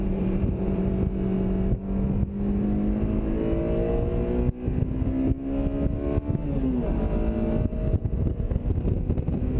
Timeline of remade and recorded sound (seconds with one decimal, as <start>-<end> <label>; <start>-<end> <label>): 0.0-0.9 remade; 0.9-9.6 recorded